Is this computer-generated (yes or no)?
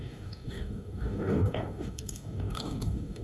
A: yes